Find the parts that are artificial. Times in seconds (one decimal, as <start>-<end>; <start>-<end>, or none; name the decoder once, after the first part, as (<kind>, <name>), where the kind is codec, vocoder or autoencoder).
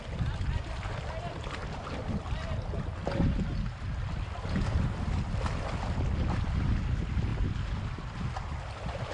none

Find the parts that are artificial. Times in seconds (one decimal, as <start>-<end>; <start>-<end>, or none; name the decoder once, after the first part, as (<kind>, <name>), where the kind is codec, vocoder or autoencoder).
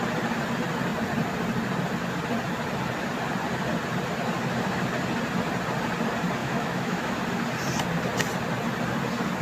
6.4-7.2 (autoencoder, DAC-VAE)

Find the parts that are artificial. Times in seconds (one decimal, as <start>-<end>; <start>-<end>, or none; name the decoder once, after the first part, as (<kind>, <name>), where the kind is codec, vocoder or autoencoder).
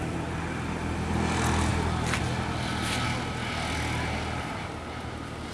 none